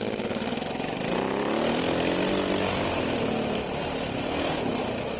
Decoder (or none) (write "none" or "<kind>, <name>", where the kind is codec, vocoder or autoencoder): none